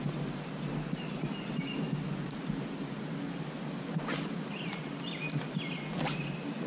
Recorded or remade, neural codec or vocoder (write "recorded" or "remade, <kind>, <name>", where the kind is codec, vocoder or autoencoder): recorded